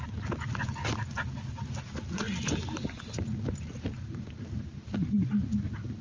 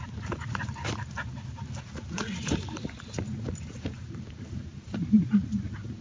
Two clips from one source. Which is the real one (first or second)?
first